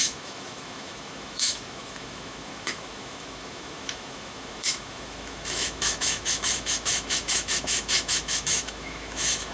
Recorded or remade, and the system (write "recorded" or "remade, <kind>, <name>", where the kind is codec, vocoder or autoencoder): remade, autoencoder, DAC-VAE